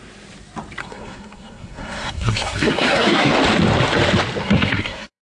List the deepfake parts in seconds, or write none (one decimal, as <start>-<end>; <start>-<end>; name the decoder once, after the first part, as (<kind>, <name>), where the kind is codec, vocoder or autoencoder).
0.8-3.3 (codec, SNAC); 4.4-5.2